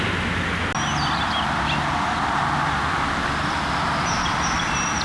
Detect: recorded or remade recorded